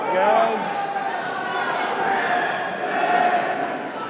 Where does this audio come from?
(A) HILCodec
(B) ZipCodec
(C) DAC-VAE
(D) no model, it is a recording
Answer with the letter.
D